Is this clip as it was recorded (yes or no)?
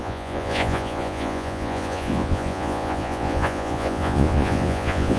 no